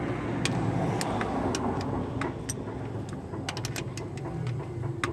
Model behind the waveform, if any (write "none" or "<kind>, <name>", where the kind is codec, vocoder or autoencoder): none